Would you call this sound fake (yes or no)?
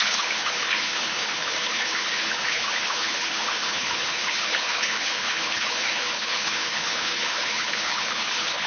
yes